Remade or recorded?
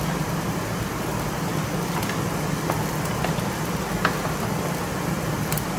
recorded